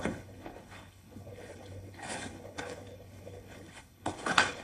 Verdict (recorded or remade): remade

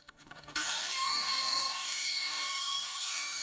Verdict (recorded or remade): remade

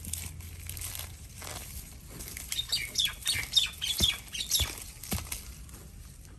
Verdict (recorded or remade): recorded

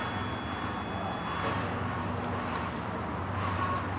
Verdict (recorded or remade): recorded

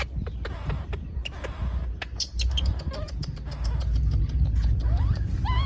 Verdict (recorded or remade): remade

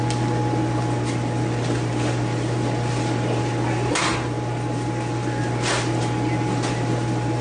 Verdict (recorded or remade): recorded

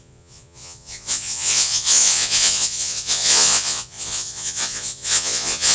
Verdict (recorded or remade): remade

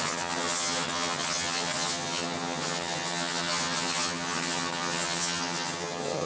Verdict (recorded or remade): remade